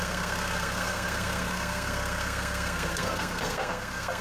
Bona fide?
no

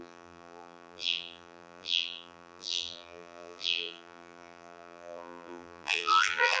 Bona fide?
no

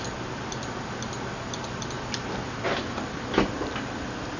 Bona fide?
yes